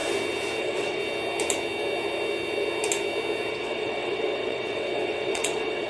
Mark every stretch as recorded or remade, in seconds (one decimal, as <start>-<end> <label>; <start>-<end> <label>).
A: 0.0-0.6 recorded; 0.6-1.0 remade; 1.0-3.5 recorded; 3.5-5.9 remade